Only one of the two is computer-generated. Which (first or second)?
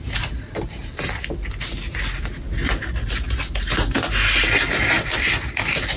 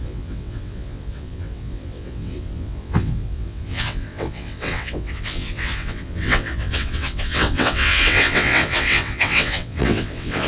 second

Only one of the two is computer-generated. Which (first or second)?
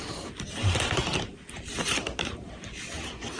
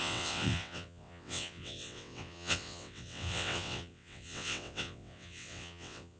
second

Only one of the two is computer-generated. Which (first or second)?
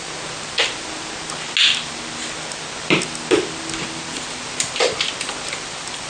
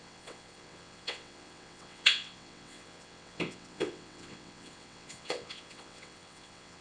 second